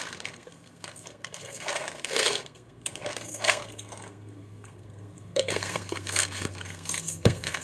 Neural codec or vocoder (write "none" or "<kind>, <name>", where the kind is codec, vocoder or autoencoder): codec, SNAC